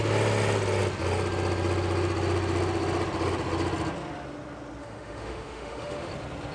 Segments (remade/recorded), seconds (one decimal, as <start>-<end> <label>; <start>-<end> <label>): 0.0-4.8 recorded; 4.8-6.1 remade; 6.1-6.5 recorded